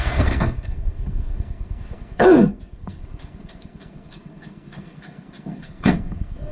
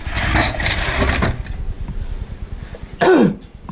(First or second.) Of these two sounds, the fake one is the first